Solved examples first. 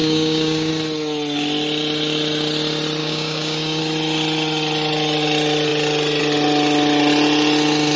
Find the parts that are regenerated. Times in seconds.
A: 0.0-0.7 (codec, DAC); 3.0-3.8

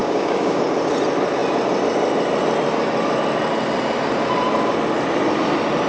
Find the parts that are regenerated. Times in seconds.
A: 0.0-0.6 (codec, DAC)

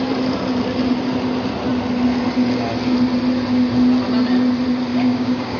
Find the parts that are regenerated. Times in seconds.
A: 4.9-5.6 (codec, DAC)

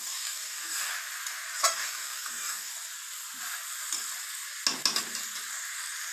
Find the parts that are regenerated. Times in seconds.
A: 0.0-0.9 (codec, DAC); 1.6-2.7